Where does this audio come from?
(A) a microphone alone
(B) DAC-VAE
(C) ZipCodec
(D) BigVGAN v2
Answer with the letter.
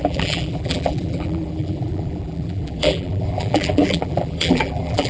D